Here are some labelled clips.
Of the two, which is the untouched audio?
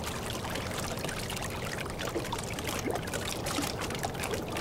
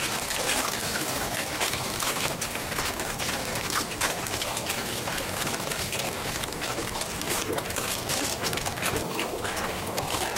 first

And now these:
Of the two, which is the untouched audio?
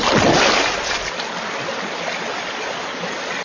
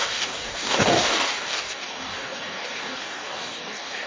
first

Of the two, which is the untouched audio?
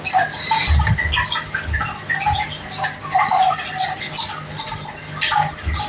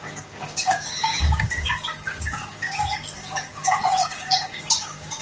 first